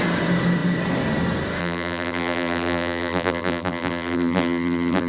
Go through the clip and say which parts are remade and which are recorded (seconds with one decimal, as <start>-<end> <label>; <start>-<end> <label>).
0.0-1.6 recorded; 1.6-5.1 remade